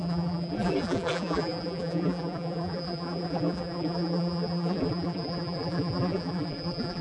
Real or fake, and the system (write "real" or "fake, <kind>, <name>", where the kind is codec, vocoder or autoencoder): fake, vocoder, BigVGAN v2